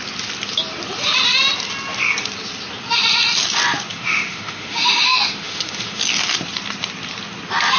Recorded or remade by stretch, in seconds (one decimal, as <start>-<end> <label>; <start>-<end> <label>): 0.0-3.9 recorded; 3.9-6.0 remade; 6.0-7.8 recorded